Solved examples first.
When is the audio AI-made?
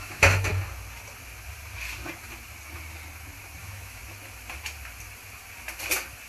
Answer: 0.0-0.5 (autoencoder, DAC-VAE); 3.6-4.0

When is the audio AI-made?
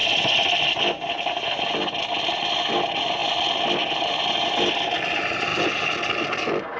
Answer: none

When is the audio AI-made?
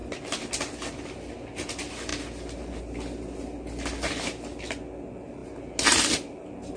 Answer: none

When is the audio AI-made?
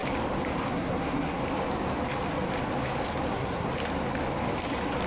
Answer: 0.7-1.4 (codec, SNAC); 3.3-3.7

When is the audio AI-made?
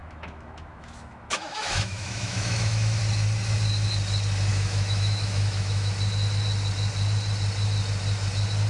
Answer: 0.0-3.0 (autoencoder, DAC-VAE); 4.5-5.9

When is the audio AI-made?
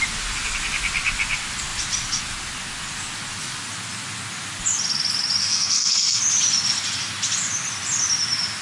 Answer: 5.4-6.2 (codec, SNAC)